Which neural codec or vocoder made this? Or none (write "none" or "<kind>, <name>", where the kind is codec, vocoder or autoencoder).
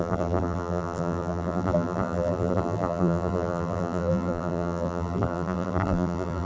vocoder, BigVGAN v2